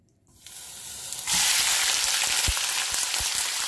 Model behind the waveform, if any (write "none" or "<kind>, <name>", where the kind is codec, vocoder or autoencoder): none